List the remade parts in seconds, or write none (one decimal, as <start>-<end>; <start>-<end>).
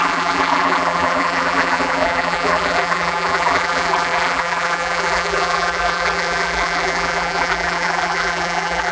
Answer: 0.0-8.9